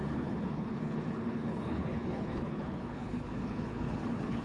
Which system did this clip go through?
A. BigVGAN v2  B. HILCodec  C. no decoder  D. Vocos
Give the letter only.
B